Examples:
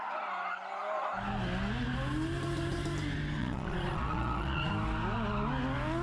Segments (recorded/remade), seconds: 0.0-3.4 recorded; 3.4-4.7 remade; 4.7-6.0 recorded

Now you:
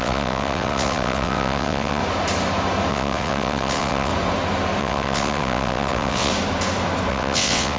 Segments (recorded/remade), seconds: 0.0-2.0 remade; 2.0-2.9 recorded; 2.9-4.1 remade; 4.1-4.8 recorded; 4.8-6.3 remade; 6.3-7.1 recorded; 7.1-7.8 remade

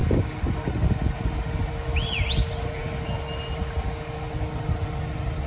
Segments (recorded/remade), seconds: 0.0-5.5 recorded

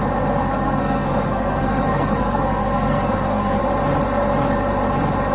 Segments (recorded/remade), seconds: 0.0-0.4 recorded; 0.4-3.6 remade; 3.6-5.3 recorded

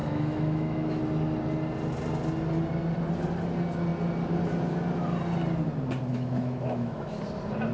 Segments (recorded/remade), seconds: 0.0-1.0 remade; 1.0-6.1 recorded; 6.1-7.2 remade; 7.2-7.7 recorded

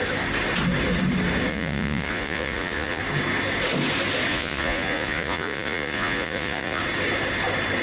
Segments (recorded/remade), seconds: 0.0-1.5 recorded; 1.5-3.0 remade; 3.0-4.3 recorded; 4.3-6.8 remade; 6.8-7.8 recorded

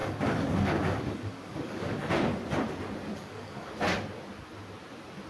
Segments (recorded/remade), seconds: 0.0-2.1 remade; 2.1-3.1 recorded; 3.1-3.7 remade; 3.7-5.3 recorded